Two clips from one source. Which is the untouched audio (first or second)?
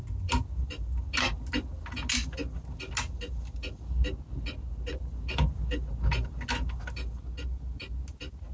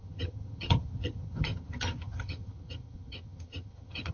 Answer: first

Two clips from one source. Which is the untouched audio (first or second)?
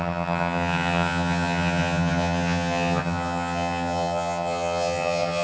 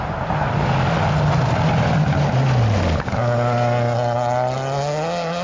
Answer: second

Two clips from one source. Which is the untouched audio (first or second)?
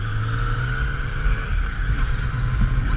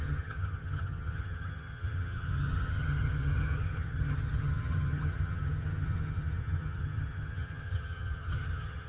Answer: first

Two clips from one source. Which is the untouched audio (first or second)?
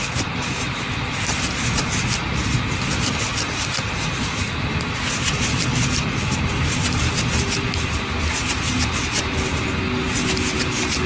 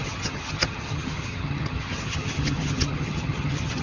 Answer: first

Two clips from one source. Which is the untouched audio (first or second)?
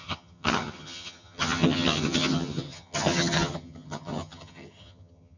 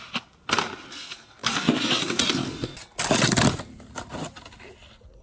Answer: second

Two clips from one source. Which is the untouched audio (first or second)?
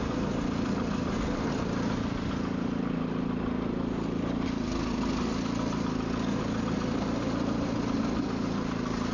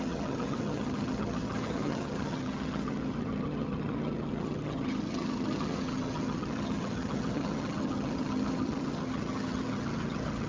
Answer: first